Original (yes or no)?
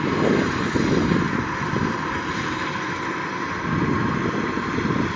yes